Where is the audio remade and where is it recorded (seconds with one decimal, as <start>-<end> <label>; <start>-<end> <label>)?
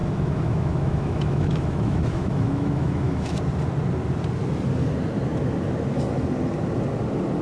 0.0-3.4 remade; 3.4-7.4 recorded